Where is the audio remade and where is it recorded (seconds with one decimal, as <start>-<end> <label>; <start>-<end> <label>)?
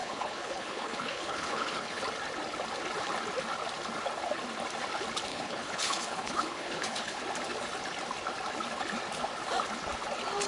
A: 0.0-2.0 remade; 2.0-5.3 recorded; 5.3-7.2 remade; 7.2-10.5 recorded